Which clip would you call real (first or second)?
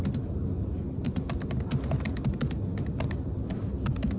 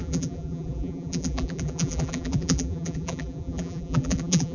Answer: first